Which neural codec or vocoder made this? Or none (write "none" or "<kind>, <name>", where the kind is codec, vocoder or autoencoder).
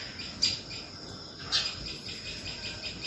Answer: none